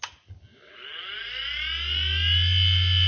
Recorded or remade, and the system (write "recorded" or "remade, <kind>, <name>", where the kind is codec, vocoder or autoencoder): recorded